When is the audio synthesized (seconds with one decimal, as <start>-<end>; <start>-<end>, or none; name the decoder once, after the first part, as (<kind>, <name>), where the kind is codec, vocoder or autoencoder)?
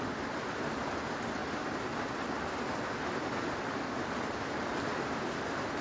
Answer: 4.9-5.8 (vocoder, BigVGAN v2)